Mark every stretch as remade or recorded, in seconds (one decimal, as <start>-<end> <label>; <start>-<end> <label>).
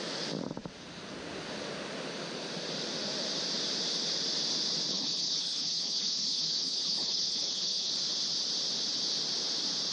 0.0-4.9 recorded; 4.9-7.9 remade; 7.9-9.9 recorded